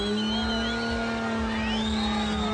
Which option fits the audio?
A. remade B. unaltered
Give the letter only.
B